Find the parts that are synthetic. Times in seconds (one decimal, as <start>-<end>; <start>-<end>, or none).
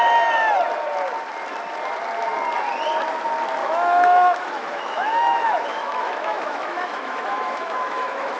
3.6-8.4